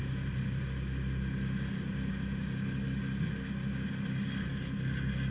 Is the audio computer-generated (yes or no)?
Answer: no